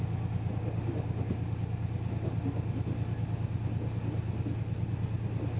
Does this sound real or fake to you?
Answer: real